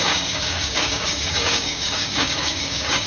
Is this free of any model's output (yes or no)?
no